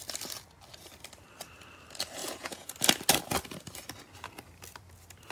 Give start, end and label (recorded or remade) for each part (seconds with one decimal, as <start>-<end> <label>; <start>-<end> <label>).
0.0-2.2 recorded; 2.2-2.7 remade; 2.7-5.3 recorded